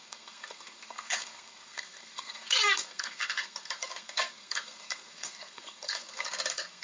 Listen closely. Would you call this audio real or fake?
fake